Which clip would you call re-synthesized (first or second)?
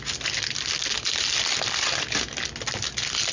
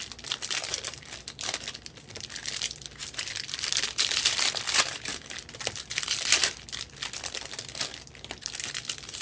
second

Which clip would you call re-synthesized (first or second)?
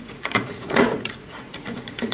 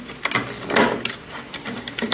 first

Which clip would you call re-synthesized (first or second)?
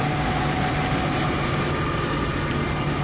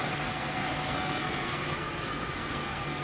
second